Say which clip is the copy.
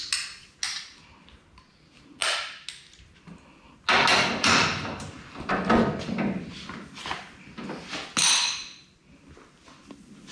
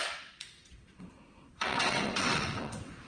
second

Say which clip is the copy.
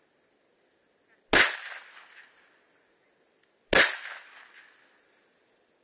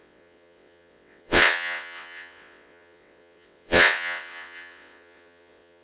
second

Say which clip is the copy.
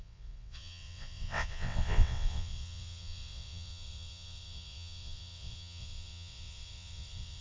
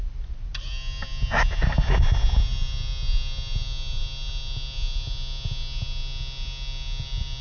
first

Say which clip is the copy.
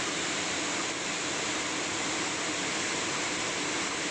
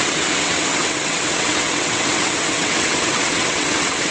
second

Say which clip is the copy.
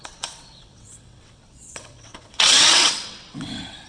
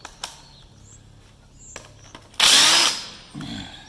first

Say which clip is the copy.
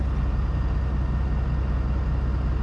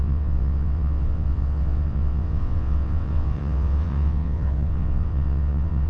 second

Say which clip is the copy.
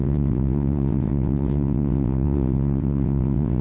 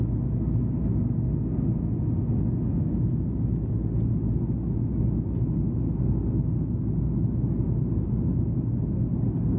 first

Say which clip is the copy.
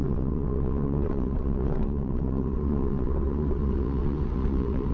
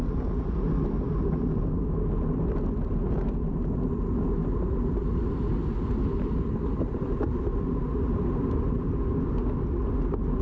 first